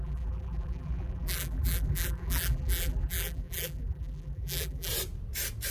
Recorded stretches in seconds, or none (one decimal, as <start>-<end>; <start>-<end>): 4.9-5.7